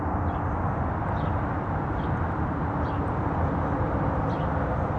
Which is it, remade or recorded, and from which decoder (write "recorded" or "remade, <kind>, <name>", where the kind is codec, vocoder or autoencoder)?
recorded